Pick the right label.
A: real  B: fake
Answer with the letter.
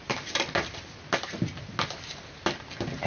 A